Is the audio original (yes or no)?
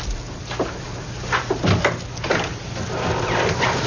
yes